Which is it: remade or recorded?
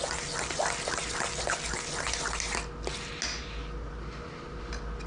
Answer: recorded